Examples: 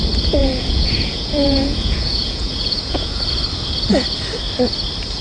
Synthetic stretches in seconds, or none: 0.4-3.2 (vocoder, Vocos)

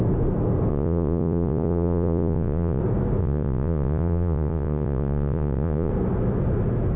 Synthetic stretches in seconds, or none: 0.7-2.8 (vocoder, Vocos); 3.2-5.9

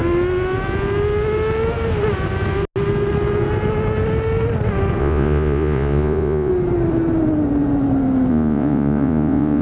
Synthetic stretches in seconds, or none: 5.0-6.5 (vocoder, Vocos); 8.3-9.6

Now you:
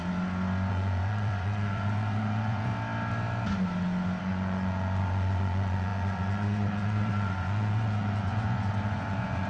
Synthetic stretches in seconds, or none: 0.7-2.7 (vocoder, Vocos); 4.2-9.5